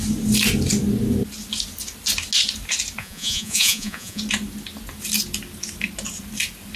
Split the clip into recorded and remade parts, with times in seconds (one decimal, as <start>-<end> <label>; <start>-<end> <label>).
0.0-3.0 recorded; 3.0-4.2 remade; 4.2-6.8 recorded